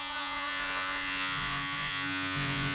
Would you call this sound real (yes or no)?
no